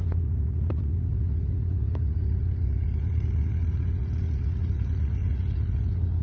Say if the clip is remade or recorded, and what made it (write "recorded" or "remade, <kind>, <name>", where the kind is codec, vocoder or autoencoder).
remade, vocoder, Vocos